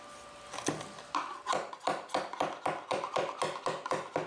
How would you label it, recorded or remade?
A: recorded